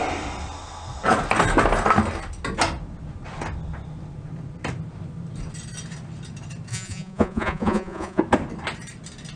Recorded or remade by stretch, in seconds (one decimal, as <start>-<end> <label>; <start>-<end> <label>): 0.0-6.7 recorded; 6.7-8.2 remade; 8.2-9.4 recorded